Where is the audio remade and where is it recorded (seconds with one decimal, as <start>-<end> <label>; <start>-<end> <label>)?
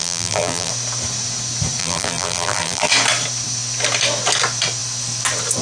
0.0-0.7 remade; 0.7-1.8 recorded; 1.8-2.9 remade; 2.9-5.6 recorded